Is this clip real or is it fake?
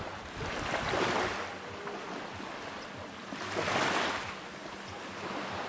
real